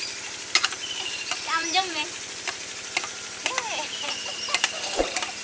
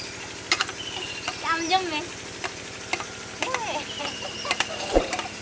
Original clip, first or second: second